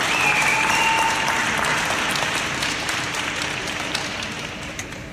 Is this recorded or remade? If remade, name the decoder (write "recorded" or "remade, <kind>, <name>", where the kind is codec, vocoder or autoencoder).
remade, vocoder, BigVGAN v2